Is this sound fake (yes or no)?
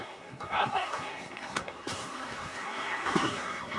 yes